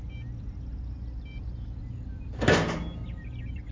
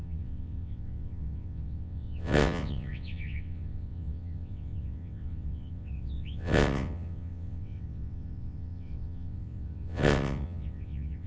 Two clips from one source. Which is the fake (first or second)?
second